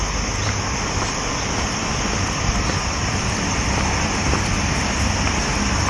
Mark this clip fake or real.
real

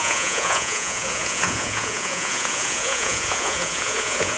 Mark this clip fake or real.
fake